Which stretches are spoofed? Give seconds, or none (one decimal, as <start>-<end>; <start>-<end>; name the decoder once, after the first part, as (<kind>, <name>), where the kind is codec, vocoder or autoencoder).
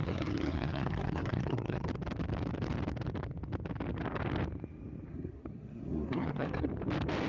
0.0-1.9 (codec, SNAC); 5.1-6.7